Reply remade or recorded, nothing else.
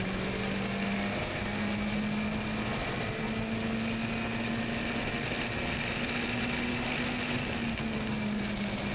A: recorded